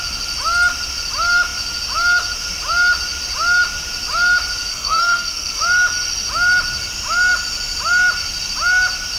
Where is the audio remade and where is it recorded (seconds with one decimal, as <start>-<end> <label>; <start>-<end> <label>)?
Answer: 0.0-4.7 recorded; 4.7-5.6 remade; 5.6-9.2 recorded